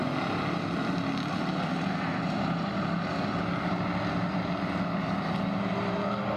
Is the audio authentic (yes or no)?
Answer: yes